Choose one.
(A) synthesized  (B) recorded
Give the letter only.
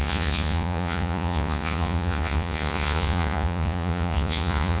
A